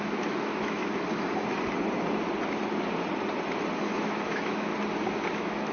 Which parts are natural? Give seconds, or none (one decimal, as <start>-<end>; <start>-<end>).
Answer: 0.9-3.8; 4.7-5.3